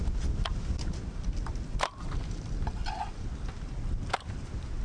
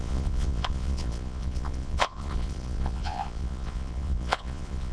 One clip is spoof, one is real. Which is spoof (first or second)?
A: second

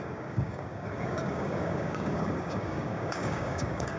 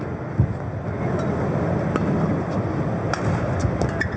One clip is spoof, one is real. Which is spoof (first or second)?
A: first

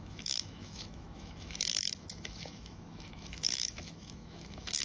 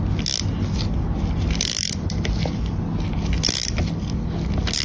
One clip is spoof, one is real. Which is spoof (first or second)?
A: first